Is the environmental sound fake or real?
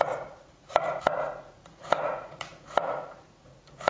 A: fake